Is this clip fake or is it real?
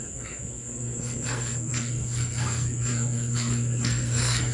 fake